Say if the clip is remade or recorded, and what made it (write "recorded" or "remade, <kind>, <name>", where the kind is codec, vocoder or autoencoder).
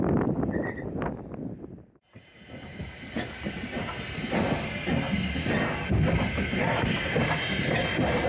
recorded